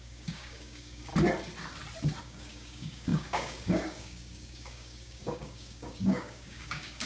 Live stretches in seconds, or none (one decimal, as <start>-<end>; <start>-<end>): 1.1-2.2